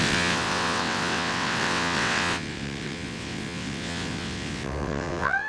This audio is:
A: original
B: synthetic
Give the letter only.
B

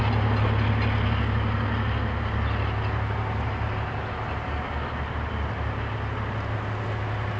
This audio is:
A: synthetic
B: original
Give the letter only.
B